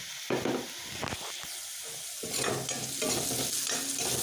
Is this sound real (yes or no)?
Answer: yes